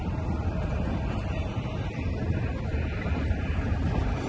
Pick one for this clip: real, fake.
real